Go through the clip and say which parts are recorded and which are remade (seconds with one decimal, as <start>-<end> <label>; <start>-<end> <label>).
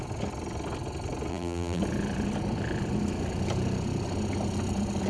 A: 0.0-1.3 recorded; 1.3-1.8 remade; 1.8-5.1 recorded